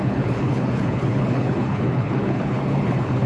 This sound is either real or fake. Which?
fake